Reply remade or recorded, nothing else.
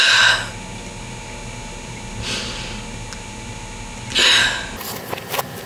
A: recorded